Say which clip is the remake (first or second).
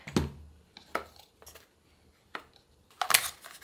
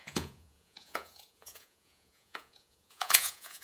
second